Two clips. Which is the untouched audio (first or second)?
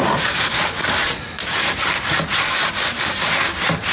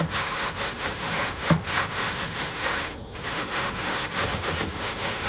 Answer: first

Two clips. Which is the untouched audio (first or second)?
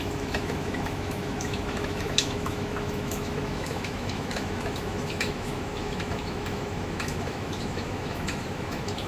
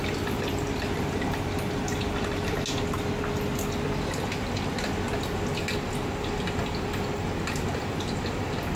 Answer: second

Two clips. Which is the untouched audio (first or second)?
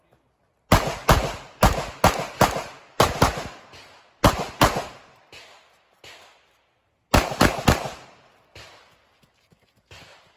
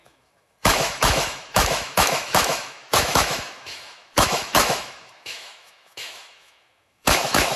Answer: first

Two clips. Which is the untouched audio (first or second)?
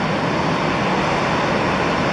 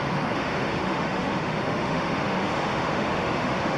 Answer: first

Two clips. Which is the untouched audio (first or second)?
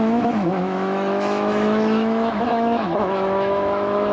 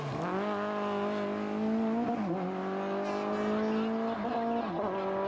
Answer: second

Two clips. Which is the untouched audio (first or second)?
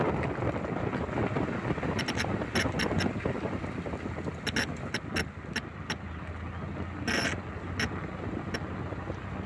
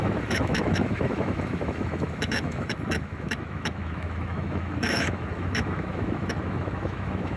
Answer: first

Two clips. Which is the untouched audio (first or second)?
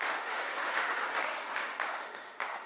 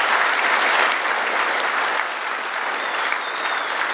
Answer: second